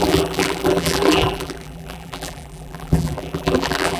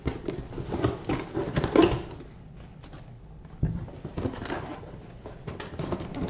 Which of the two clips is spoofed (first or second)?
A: first